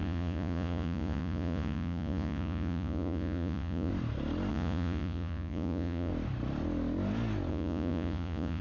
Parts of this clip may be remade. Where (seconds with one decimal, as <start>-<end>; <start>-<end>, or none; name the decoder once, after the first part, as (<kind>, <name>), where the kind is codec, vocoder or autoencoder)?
0.0-3.9 (vocoder, Vocos); 4.5-6.1; 7.5-8.6